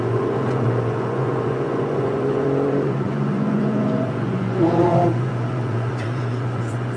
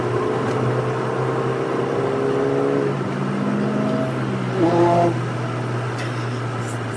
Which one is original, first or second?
second